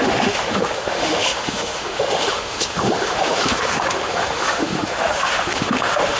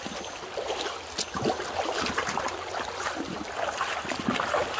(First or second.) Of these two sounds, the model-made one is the first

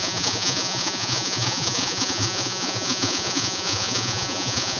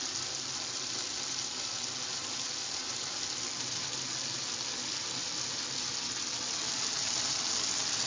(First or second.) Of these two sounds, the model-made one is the first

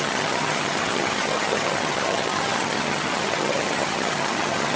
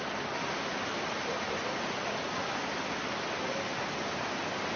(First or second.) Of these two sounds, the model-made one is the first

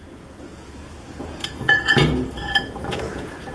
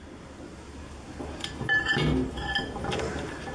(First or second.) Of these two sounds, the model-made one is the first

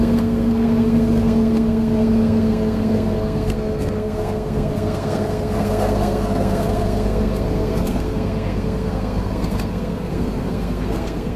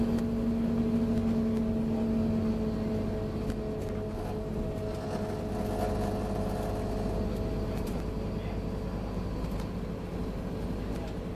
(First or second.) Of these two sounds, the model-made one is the first